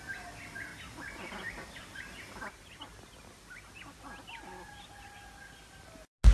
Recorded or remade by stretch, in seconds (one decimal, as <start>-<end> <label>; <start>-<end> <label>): 0.0-0.7 recorded; 0.7-2.2 remade; 2.2-6.3 recorded